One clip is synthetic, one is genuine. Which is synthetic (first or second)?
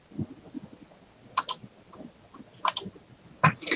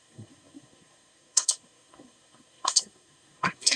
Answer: second